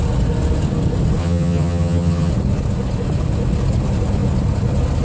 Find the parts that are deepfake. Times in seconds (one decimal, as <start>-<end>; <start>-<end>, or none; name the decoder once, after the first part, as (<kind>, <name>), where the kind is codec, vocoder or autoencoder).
1.2-2.3 (vocoder, HiFi-GAN)